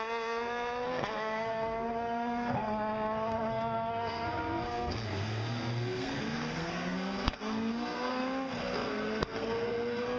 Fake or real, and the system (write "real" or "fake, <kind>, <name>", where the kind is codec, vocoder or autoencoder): fake, codec, SNAC